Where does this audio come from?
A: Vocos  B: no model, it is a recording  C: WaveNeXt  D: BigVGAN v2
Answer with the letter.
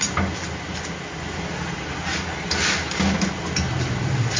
B